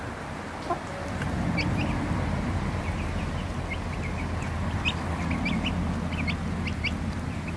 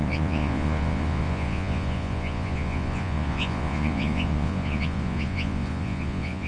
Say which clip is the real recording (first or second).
first